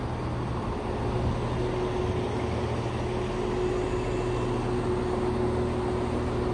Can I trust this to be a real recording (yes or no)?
yes